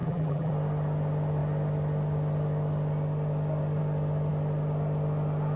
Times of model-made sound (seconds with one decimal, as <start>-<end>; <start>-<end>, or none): 0.0-0.5